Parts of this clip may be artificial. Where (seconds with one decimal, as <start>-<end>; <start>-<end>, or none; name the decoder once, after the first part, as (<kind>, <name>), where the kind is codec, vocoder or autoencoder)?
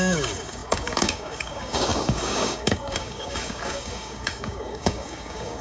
0.0-5.6 (codec, DAC)